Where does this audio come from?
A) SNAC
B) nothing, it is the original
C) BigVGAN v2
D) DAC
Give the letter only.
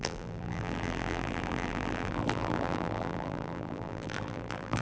C